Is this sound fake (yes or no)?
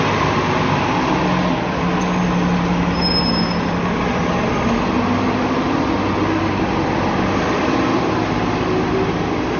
no